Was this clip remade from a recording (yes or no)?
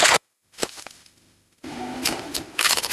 yes